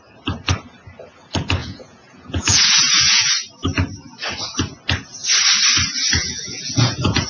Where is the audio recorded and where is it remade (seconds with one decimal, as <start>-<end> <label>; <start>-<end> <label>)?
0.0-1.6 recorded; 1.6-3.3 remade; 3.3-6.0 recorded; 6.0-7.3 remade